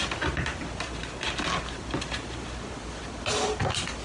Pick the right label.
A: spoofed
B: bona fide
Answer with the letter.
B